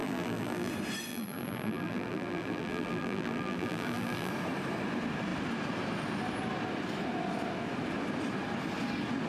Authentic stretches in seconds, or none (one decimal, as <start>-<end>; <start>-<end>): 0.7-1.1; 4.3-9.3